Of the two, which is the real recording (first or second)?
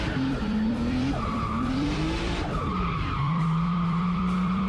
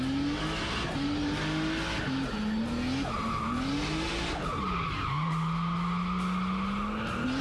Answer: second